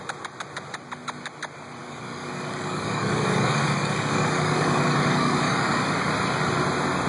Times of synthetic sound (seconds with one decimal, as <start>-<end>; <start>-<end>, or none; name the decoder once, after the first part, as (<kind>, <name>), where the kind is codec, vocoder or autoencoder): 1.8-6.1 (codec, DAC)